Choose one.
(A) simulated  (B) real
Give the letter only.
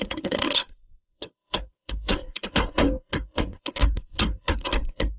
A